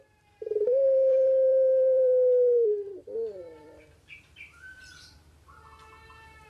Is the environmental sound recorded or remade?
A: remade